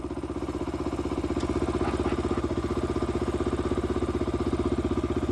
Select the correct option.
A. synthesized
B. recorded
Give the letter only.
B